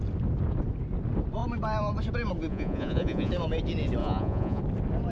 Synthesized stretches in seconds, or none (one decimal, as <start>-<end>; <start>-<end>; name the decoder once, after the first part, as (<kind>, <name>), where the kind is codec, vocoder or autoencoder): 2.5-3.3 (vocoder, Vocos); 4.0-4.6